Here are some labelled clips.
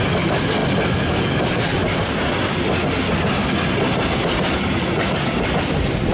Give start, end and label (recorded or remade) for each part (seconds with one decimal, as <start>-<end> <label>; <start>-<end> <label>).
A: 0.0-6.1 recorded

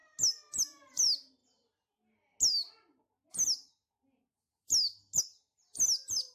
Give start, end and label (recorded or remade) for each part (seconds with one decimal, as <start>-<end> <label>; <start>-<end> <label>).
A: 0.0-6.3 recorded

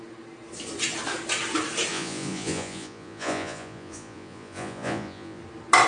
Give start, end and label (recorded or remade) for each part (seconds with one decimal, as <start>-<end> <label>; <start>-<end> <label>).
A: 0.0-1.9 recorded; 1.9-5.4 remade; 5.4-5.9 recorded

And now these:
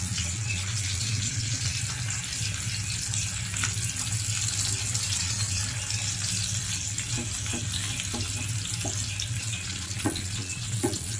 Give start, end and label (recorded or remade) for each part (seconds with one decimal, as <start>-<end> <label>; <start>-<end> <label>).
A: 0.0-1.7 remade; 1.7-5.1 recorded; 5.1-5.6 remade; 5.6-9.4 recorded; 9.4-11.2 remade